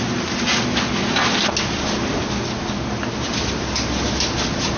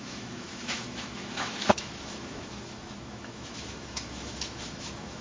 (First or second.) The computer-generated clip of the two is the second